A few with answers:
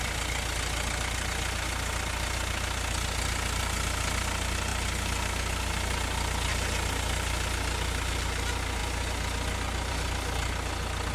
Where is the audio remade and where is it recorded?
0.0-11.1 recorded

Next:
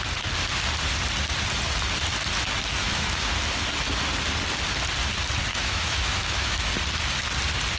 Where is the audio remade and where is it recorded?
0.0-2.8 recorded; 2.8-3.3 remade; 3.3-5.5 recorded; 5.5-6.7 remade; 6.7-7.8 recorded